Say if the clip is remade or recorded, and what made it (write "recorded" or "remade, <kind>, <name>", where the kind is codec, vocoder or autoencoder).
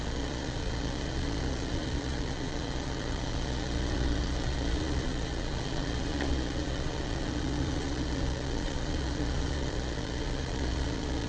remade, vocoder, Vocos